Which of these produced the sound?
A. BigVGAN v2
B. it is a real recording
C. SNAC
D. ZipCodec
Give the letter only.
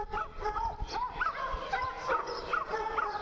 A